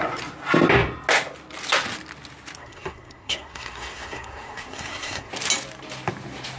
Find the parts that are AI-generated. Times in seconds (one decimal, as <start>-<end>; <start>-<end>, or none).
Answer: 2.6-5.3